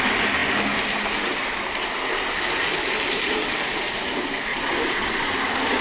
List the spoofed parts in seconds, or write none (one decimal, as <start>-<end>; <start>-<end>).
4.5-5.3

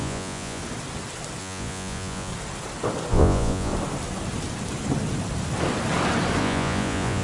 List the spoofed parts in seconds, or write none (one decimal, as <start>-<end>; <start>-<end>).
0.0-0.6; 1.4-2.3; 3.1-3.7; 6.4-7.2

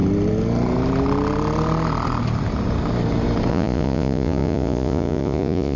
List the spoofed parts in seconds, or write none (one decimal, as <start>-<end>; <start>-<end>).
3.5-5.8

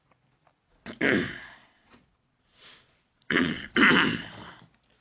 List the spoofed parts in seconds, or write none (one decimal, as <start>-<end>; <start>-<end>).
1.6-3.7

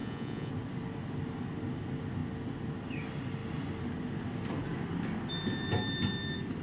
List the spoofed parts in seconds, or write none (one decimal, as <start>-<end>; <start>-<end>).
0.0-0.5